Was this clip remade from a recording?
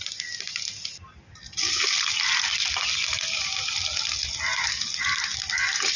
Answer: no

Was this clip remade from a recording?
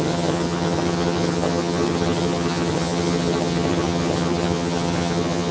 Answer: yes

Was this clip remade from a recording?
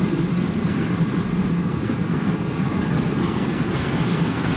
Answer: yes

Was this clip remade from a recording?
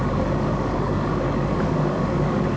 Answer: yes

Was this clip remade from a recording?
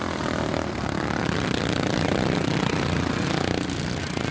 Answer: no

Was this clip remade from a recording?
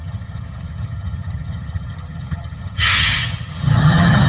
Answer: yes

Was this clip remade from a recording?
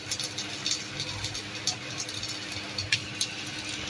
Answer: no